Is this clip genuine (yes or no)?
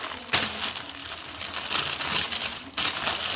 yes